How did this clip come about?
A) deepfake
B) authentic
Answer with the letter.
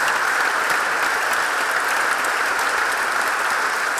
B